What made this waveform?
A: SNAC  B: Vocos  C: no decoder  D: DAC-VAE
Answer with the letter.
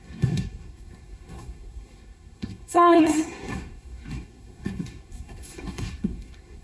A